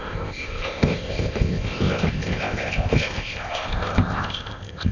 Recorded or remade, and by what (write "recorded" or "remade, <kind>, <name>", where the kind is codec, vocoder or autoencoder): remade, codec, ZipCodec